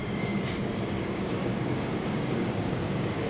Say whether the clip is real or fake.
fake